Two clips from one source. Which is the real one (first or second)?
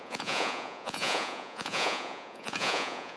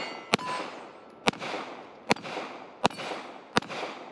second